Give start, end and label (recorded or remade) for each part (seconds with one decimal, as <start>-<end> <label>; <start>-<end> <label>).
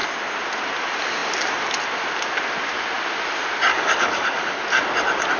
0.0-3.7 recorded; 3.7-4.6 remade; 4.6-5.4 recorded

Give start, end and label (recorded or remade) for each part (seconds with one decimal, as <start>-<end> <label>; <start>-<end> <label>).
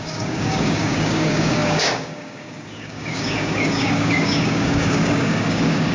0.0-5.9 remade